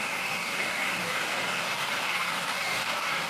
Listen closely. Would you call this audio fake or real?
fake